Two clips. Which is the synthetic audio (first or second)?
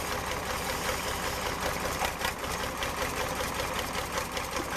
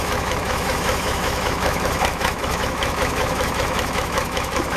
second